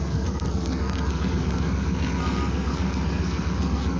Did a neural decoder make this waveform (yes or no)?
yes